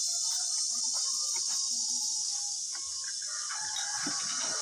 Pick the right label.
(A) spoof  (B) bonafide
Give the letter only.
B